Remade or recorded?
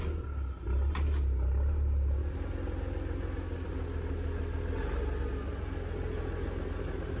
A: recorded